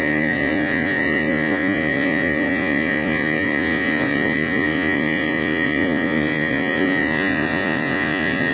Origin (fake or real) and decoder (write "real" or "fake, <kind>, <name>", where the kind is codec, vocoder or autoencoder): fake, vocoder, Vocos